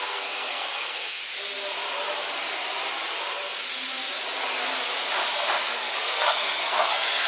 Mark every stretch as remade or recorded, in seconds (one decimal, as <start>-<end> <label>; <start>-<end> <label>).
0.0-1.2 remade; 1.2-5.6 recorded; 5.6-7.3 remade